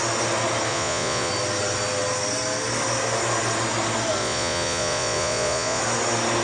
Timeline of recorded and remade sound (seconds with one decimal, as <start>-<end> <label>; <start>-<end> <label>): 0.0-0.7 recorded; 0.7-1.3 remade; 1.3-4.2 recorded; 4.2-5.8 remade; 5.8-6.4 recorded